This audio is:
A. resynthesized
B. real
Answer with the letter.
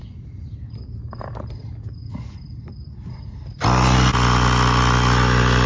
B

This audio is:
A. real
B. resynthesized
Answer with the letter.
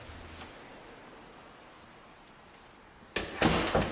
A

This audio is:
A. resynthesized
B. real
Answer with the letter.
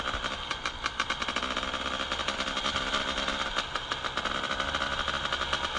B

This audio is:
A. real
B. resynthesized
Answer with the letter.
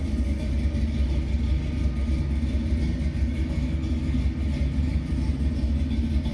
A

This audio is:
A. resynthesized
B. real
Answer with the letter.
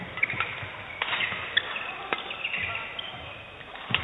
B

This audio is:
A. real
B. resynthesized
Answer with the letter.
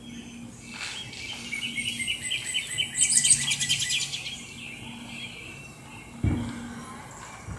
A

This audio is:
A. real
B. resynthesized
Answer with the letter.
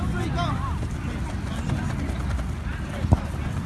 A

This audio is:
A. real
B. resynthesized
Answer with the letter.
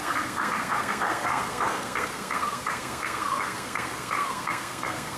B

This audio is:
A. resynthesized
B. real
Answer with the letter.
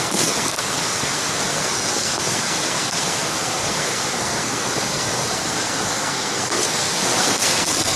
A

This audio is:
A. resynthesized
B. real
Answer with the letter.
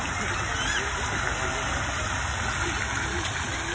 B